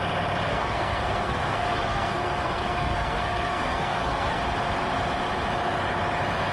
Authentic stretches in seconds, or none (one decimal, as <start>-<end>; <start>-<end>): 0.0-0.5; 4.4-6.5